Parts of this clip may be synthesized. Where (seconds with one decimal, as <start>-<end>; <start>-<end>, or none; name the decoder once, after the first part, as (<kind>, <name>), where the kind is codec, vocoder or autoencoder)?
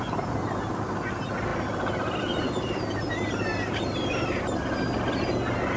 1.5-3.1 (vocoder, BigVGAN v2); 3.5-4.4